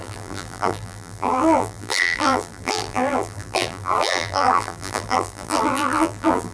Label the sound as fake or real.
fake